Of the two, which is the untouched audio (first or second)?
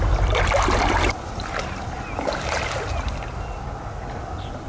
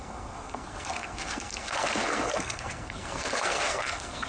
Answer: first